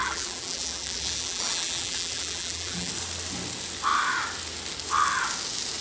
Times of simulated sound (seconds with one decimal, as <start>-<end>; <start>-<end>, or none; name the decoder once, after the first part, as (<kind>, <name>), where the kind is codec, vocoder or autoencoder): 0.0-2.9 (vocoder, BigVGAN v2)